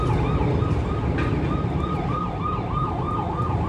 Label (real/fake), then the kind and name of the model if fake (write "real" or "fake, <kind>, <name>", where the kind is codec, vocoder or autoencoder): real